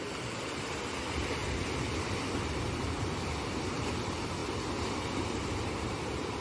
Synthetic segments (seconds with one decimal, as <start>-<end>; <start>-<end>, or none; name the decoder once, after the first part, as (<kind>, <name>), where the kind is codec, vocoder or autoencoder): none